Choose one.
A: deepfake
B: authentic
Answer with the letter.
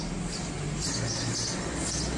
B